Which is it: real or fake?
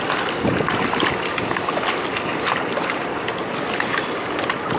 real